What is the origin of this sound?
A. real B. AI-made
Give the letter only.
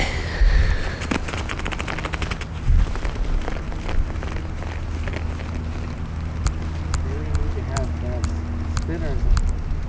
A